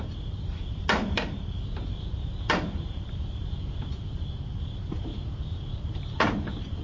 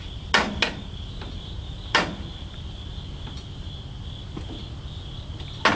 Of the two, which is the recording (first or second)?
second